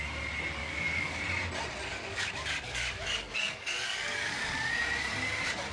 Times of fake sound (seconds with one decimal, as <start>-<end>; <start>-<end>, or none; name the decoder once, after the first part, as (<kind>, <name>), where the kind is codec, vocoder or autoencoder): 0.6-1.2 (codec, DAC); 1.9-4.7